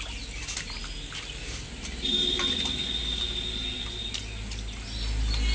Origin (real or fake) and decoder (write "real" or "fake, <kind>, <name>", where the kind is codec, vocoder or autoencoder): real